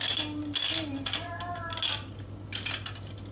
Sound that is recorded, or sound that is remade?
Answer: recorded